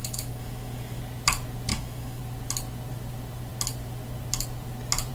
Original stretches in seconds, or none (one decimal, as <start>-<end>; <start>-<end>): 1.0-1.7; 2.2-5.1